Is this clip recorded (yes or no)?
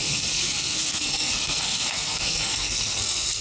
no